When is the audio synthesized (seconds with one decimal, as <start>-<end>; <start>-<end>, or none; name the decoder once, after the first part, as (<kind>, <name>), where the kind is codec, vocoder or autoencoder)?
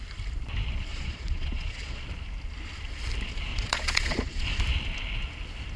0.9-2.0 (vocoder, Vocos); 3.5-4.6